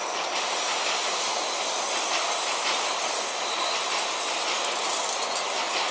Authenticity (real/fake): real